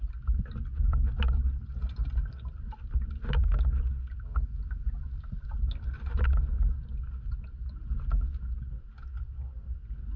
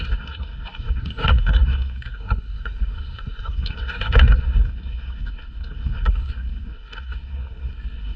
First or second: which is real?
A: first